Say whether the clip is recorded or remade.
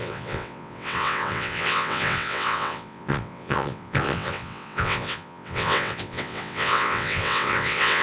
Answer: remade